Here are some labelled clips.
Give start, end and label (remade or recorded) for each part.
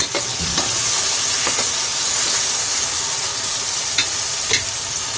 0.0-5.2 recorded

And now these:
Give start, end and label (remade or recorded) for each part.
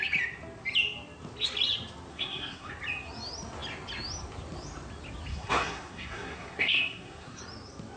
0.0-2.1 recorded; 2.1-2.7 remade; 2.7-5.3 recorded; 5.3-7.4 remade; 7.4-8.0 recorded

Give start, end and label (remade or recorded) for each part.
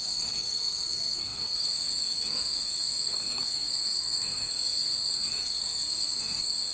0.0-6.7 remade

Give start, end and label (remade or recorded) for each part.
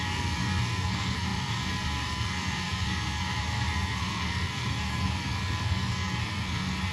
0.0-6.9 remade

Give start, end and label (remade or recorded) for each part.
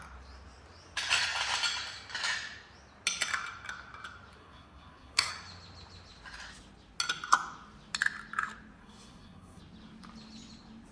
0.0-4.4 recorded; 4.4-5.3 remade; 5.3-8.8 recorded; 8.8-9.6 remade; 9.6-10.9 recorded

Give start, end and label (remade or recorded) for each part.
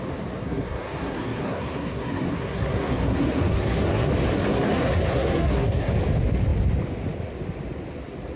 0.0-0.4 recorded; 0.4-4.1 remade; 4.1-4.5 recorded; 4.5-5.9 remade; 5.9-8.4 recorded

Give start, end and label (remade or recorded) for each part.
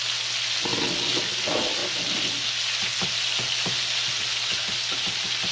0.0-5.5 recorded